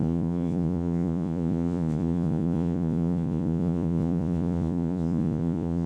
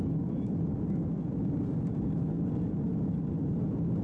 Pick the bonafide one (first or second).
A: second